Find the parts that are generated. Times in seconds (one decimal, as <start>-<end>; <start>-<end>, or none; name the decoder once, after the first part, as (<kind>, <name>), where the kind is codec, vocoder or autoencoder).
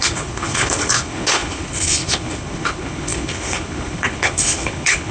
0.0-5.1 (codec, HILCodec)